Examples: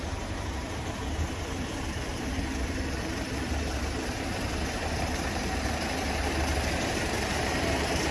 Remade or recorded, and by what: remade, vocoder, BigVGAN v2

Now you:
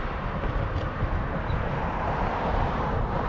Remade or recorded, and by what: remade, vocoder, BigVGAN v2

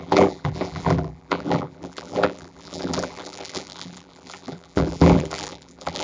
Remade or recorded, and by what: remade, vocoder, BigVGAN v2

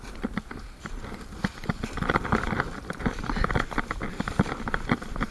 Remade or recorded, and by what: recorded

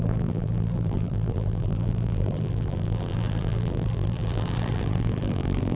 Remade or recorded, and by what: remade, vocoder, BigVGAN v2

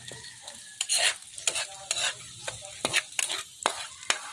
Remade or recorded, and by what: recorded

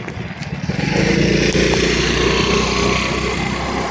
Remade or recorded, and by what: recorded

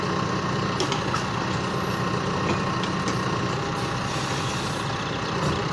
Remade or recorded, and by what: recorded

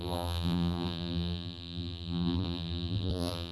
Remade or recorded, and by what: remade, vocoder, BigVGAN v2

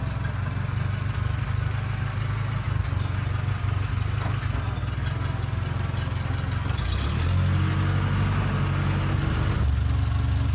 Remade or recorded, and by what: recorded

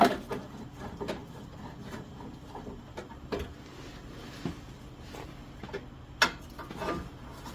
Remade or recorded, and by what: recorded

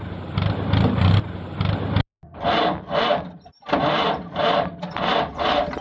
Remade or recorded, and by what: recorded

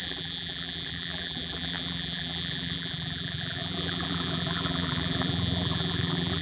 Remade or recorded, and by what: remade, vocoder, BigVGAN v2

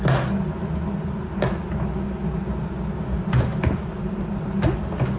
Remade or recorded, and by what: recorded